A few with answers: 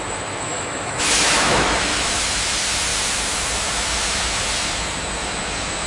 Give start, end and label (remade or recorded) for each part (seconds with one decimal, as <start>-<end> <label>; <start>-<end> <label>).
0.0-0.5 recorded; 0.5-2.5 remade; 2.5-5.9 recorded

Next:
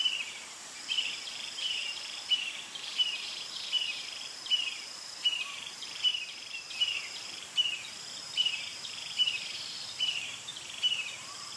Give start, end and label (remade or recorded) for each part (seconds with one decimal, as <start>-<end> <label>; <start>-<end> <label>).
0.0-11.6 remade

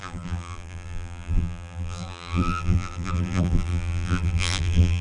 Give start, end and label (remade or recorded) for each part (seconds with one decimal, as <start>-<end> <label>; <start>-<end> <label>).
0.0-5.0 remade